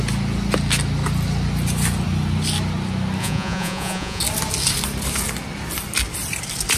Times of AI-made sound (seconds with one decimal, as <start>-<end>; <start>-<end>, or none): 3.2-4.2